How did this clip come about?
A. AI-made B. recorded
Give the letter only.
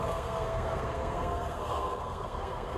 A